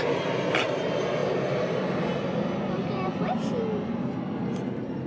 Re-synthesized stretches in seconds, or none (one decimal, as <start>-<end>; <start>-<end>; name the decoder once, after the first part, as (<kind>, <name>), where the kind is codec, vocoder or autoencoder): none